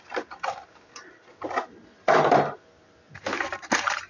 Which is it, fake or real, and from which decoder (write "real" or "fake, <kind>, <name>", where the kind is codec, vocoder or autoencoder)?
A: real